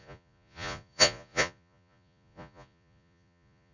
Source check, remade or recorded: remade